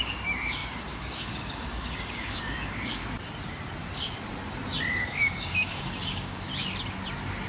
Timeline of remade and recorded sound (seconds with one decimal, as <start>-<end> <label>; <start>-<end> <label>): 0.0-3.0 remade; 3.0-5.0 recorded; 5.0-6.5 remade; 6.5-7.5 recorded